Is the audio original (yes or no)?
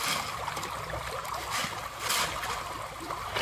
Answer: yes